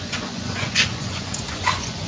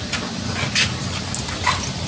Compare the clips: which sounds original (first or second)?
second